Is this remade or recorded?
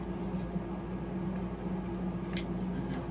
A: recorded